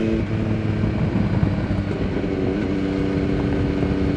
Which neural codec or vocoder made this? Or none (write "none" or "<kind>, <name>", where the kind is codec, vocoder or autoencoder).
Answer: none